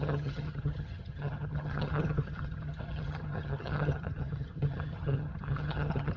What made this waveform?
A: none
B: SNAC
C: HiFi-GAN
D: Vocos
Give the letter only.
C